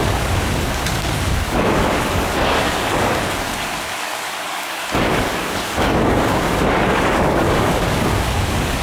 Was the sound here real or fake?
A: fake